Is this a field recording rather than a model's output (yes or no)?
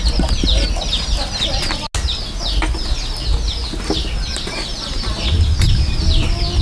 yes